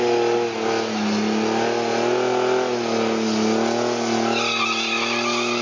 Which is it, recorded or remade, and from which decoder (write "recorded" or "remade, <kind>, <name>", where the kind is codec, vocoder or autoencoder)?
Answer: recorded